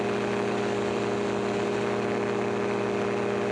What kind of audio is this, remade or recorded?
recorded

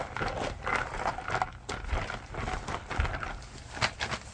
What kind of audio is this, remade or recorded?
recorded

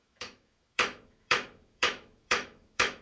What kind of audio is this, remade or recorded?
remade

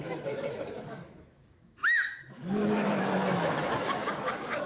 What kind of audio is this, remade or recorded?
remade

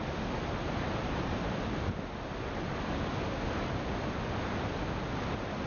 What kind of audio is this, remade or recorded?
recorded